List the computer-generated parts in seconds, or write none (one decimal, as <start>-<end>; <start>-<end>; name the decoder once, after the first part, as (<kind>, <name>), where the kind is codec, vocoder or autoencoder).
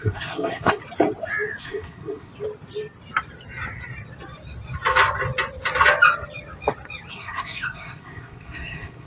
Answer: 0.0-0.8 (codec, SNAC); 1.6-2.3; 7.1-9.1